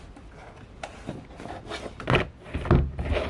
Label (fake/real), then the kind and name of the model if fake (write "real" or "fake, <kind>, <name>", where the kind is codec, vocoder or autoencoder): real